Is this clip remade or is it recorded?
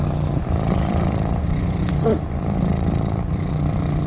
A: remade